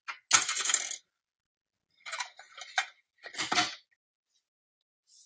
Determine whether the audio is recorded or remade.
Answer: recorded